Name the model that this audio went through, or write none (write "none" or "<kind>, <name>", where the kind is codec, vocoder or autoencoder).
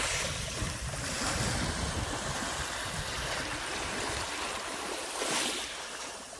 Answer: none